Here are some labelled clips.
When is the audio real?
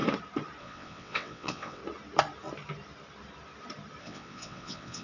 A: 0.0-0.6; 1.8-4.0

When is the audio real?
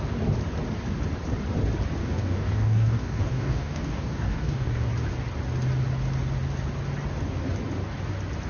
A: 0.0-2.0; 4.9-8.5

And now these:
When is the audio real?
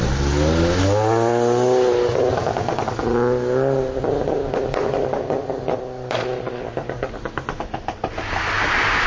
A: 0.0-9.1